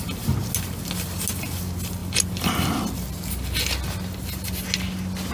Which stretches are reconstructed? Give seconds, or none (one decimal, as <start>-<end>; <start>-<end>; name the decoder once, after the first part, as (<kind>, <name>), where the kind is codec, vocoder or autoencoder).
none